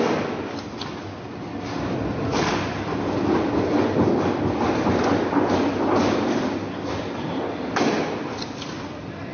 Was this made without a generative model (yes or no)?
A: yes